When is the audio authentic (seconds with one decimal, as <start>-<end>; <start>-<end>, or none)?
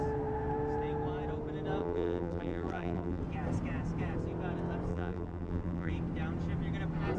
0.0-1.8; 3.2-4.9; 5.9-7.2